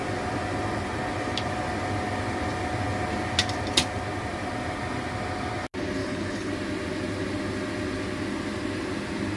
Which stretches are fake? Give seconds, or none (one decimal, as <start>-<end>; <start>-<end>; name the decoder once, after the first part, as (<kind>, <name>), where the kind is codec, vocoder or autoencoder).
6.0-6.5 (codec, HILCodec)